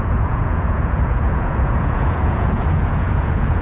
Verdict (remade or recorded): remade